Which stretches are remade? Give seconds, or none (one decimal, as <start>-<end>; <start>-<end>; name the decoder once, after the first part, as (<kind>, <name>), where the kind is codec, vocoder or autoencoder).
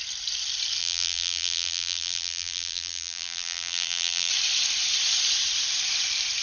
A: 0.8-4.3 (vocoder, BigVGAN v2)